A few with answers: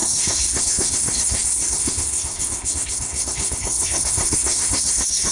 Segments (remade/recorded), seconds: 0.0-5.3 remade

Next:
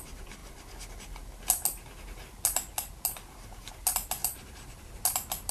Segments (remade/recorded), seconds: 0.0-5.5 recorded

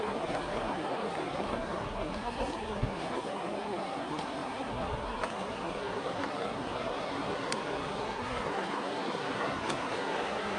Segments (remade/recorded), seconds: 0.0-10.6 remade